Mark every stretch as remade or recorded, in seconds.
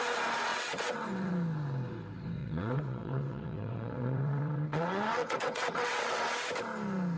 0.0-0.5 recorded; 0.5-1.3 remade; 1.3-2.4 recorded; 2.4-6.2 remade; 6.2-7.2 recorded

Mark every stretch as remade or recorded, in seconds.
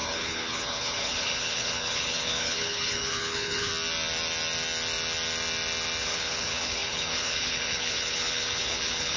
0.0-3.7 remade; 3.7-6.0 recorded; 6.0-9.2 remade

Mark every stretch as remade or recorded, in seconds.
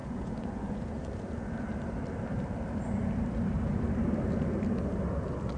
0.0-1.1 remade; 1.1-5.6 recorded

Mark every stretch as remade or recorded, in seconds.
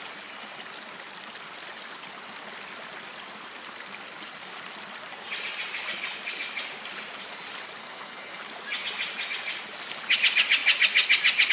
0.0-7.8 recorded; 7.8-8.4 remade; 8.4-11.5 recorded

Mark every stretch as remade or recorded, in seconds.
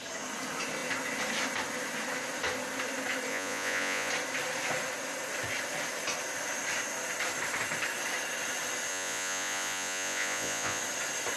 0.0-3.3 recorded; 3.3-4.1 remade; 4.1-8.9 recorded; 8.9-10.8 remade; 10.8-11.4 recorded